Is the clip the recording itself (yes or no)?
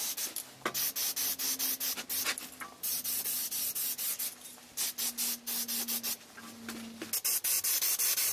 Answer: yes